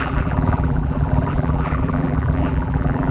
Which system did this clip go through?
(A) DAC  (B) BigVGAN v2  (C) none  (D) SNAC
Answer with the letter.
B